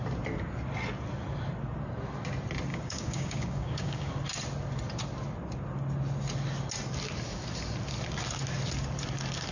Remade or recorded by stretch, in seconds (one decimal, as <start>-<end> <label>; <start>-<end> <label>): 0.0-2.7 recorded; 2.7-4.1 remade; 4.1-9.5 recorded